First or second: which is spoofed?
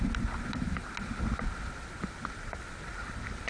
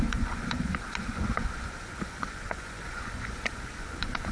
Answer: second